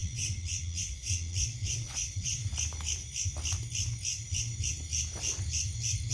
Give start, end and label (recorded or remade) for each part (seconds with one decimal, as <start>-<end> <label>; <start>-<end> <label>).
0.0-2.4 remade; 2.4-6.1 recorded

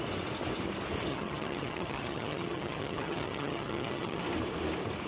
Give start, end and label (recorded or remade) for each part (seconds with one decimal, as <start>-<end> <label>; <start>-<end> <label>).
0.0-1.1 recorded; 1.1-4.2 remade; 4.2-5.1 recorded

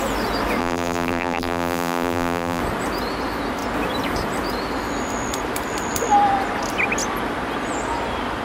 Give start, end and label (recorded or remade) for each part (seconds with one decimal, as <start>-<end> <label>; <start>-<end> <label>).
0.0-0.6 recorded; 0.6-2.6 remade; 2.6-8.4 recorded

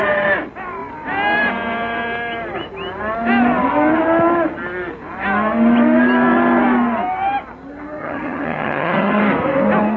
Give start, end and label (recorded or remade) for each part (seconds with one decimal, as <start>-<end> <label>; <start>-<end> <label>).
0.0-8.0 recorded; 8.0-9.2 remade; 9.2-10.0 recorded

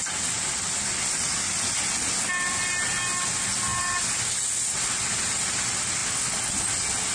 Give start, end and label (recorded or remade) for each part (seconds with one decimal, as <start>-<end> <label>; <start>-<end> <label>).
0.0-7.1 recorded

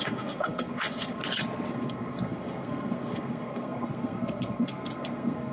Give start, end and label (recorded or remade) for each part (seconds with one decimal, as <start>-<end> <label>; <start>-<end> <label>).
0.0-1.2 remade; 1.2-1.7 recorded; 1.7-5.5 remade

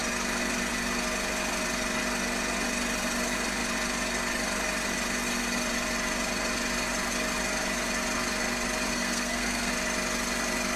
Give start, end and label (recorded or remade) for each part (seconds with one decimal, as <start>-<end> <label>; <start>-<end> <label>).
0.0-8.9 recorded; 8.9-9.7 remade; 9.7-10.8 recorded

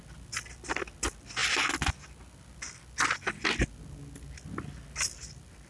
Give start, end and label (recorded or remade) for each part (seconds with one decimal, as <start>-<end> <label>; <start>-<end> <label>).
0.0-5.7 recorded